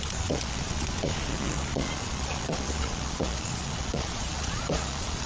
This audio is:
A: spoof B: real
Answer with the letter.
A